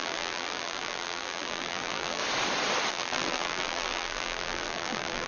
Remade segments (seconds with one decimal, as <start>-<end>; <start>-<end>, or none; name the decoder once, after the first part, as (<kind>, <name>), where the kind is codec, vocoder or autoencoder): 0.0-2.2 (vocoder, BigVGAN v2); 2.9-5.3